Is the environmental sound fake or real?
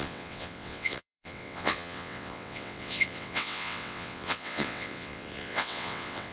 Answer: fake